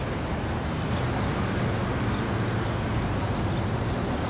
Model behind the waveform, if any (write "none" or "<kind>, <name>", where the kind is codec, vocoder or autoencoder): none